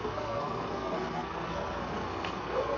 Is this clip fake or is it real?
fake